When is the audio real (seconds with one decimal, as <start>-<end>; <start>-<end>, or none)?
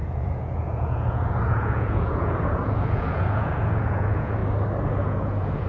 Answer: 4.4-5.0